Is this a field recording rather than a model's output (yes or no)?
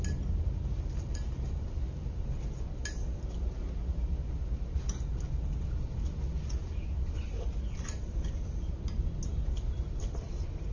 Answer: yes